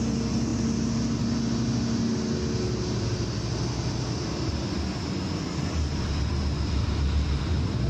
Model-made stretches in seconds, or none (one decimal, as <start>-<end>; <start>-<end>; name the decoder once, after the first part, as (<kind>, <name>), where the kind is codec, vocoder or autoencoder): none